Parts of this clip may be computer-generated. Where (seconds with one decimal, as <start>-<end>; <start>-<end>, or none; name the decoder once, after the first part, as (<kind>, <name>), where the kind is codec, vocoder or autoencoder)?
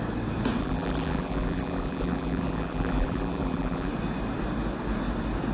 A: 0.6-3.9 (vocoder, BigVGAN v2)